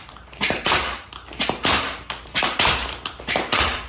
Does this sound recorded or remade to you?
remade